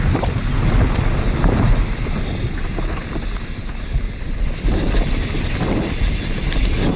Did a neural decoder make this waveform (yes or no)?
no